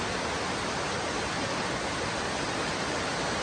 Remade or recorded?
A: recorded